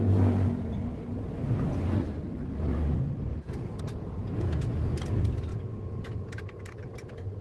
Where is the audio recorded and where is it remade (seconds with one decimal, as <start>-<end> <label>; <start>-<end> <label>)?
0.0-3.3 recorded; 3.3-3.8 remade; 3.8-4.2 recorded; 4.2-4.9 remade; 4.9-5.5 recorded; 5.5-6.4 remade; 6.4-7.4 recorded